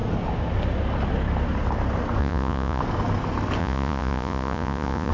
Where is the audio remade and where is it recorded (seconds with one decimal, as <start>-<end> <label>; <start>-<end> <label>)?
0.0-2.2 recorded; 2.2-2.8 remade; 2.8-3.6 recorded; 3.6-5.1 remade